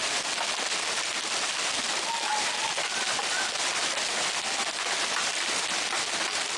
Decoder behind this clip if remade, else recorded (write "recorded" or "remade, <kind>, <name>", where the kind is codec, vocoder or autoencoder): recorded